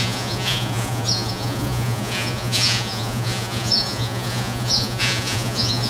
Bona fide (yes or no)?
no